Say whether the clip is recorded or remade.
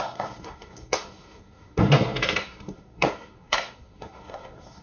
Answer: remade